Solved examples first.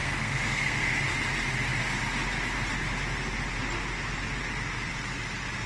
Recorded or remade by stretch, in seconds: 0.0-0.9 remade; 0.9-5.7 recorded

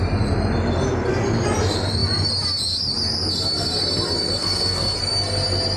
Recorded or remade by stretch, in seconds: 0.0-4.4 recorded; 4.4-5.0 remade; 5.0-5.8 recorded